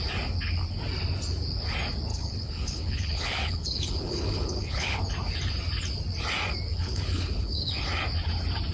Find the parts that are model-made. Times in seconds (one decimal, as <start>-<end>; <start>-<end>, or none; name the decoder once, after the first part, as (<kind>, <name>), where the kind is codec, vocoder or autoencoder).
2.1-5.0 (codec, HILCodec); 6.7-7.8

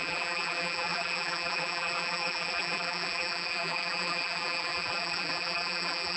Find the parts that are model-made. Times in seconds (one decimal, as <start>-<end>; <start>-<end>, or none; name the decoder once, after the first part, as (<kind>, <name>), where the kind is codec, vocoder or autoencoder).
0.0-6.2 (vocoder, BigVGAN v2)

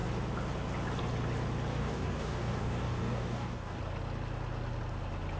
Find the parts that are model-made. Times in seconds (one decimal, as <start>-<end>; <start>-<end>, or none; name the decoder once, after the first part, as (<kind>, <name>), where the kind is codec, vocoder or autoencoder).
1.7-3.8 (codec, DAC)

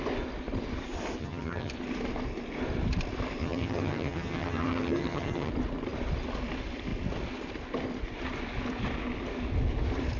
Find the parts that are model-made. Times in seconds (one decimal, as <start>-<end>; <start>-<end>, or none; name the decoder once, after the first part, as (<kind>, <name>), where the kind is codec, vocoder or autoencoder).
1.2-1.7 (vocoder, HiFi-GAN); 3.4-5.5